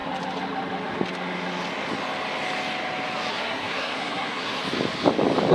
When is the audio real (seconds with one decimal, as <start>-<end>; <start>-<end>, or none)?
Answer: 0.0-3.3; 4.6-5.5